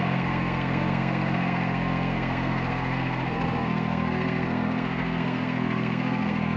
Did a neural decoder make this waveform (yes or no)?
yes